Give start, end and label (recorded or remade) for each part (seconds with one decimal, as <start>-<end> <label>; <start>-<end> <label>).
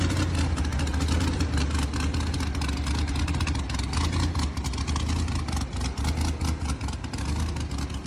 0.0-8.1 recorded